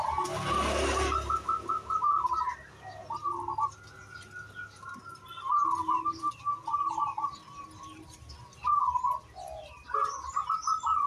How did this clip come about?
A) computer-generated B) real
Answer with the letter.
B